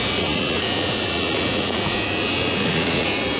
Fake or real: fake